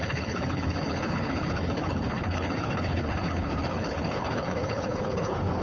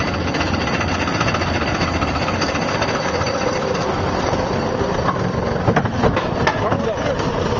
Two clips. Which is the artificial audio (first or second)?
first